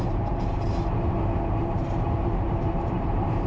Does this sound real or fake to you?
fake